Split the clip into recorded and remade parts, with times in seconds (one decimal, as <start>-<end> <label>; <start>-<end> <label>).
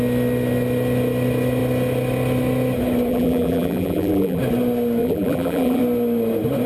0.0-3.1 recorded; 3.1-4.4 remade; 4.4-5.0 recorded; 5.0-5.8 remade; 5.8-6.7 recorded